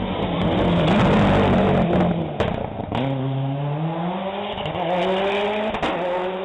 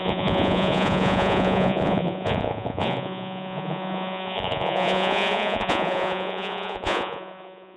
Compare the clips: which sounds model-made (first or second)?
second